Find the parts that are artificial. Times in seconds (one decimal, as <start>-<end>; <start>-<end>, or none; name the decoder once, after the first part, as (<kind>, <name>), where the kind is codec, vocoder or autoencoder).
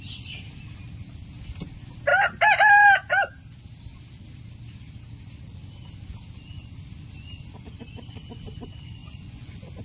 9.0-9.8 (vocoder, Vocos)